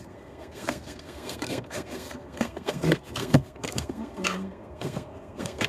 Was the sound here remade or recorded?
remade